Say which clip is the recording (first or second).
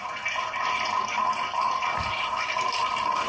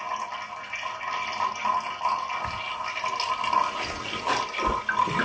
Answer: second